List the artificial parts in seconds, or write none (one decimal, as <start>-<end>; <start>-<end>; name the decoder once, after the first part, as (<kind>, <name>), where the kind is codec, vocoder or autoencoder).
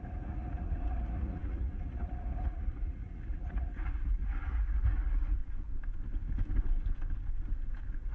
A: 0.0-5.4 (vocoder, Vocos)